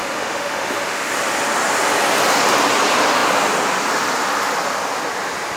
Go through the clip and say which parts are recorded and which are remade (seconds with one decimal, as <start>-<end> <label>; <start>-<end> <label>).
0.0-1.1 remade; 1.1-5.6 recorded